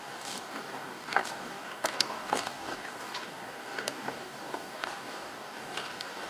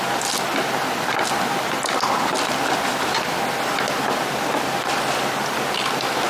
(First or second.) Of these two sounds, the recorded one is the second